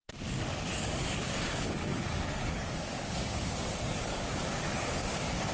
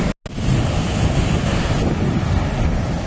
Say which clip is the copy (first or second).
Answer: first